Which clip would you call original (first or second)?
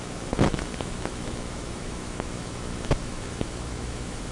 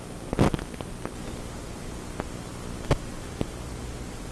second